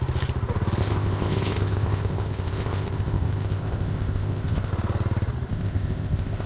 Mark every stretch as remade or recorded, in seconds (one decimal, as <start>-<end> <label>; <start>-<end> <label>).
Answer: 0.0-0.8 recorded; 0.8-4.7 remade; 4.7-5.5 recorded; 5.5-6.5 remade

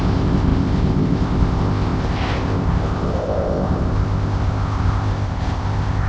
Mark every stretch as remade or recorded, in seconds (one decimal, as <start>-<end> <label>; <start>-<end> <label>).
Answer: 0.0-6.1 remade